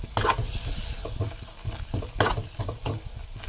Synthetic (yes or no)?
no